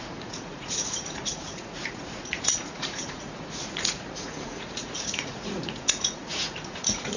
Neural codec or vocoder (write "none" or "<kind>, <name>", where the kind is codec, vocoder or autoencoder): vocoder, Vocos